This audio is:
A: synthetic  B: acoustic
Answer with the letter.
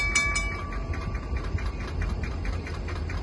B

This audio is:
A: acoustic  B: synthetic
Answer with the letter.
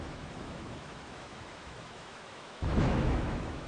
B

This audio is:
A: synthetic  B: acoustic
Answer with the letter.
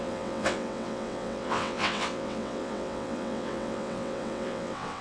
A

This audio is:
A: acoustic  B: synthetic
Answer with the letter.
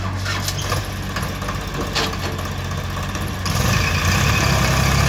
A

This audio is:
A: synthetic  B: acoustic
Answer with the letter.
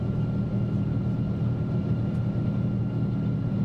B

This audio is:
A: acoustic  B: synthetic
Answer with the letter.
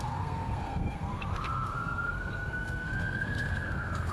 B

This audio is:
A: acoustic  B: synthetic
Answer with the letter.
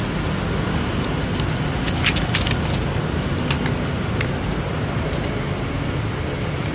A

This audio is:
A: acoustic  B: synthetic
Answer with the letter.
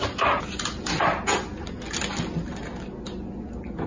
A